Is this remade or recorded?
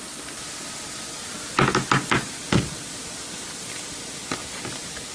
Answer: recorded